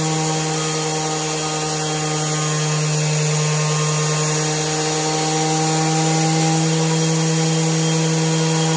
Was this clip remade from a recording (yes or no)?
no